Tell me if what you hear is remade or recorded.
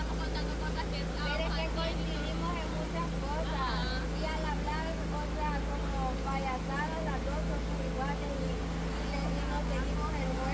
recorded